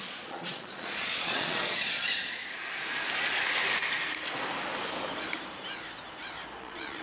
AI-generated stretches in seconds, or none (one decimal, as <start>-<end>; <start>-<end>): 0.0-2.4; 6.6-7.0